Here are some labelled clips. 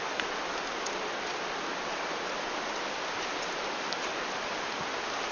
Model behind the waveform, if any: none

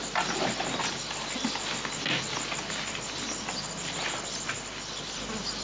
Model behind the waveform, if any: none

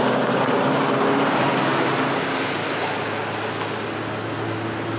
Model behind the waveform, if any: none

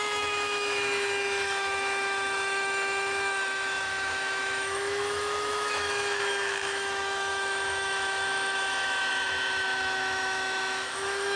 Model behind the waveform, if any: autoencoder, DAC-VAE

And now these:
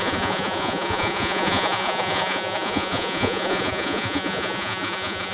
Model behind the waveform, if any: vocoder, Vocos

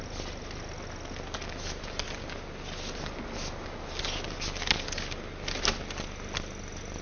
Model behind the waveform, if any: none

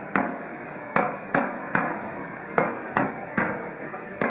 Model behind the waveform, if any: codec, SNAC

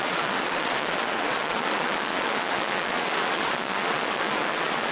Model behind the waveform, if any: vocoder, Vocos